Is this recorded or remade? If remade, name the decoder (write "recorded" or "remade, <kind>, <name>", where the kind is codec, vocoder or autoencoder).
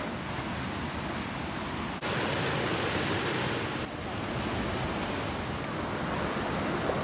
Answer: recorded